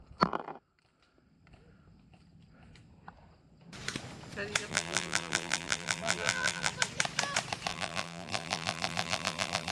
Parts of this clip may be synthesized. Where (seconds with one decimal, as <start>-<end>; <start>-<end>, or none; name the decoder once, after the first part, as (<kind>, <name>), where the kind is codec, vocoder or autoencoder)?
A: 4.7-6.7 (vocoder, BigVGAN v2); 7.7-9.7